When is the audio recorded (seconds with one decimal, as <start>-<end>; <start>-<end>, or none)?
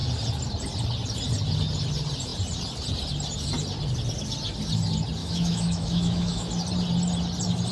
0.0-5.2; 6.5-7.7